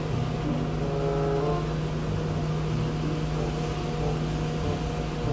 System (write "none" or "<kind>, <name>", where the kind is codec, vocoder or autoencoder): none